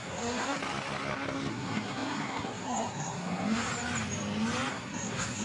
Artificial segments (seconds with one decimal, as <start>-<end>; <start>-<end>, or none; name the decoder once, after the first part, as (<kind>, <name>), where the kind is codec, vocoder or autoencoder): 0.0-0.6 (codec, SNAC); 1.5-3.7; 4.7-5.4